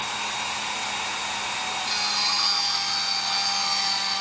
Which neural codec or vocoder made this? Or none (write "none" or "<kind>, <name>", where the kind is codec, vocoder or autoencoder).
none